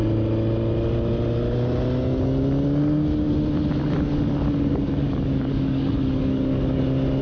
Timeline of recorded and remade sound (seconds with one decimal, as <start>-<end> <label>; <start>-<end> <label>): 0.0-3.8 recorded; 3.8-6.8 remade; 6.8-7.2 recorded